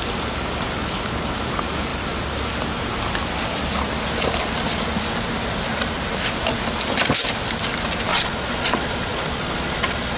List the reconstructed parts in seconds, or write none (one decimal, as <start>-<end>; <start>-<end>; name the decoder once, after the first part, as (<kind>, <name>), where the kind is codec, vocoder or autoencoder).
8.1-10.2 (vocoder, Vocos)